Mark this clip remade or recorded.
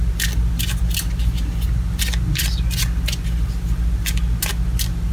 recorded